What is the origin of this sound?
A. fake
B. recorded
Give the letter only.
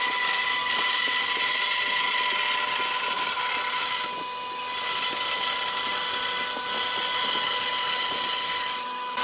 B